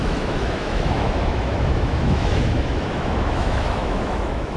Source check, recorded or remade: remade